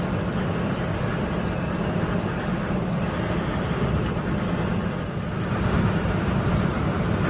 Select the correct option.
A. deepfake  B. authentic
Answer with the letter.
B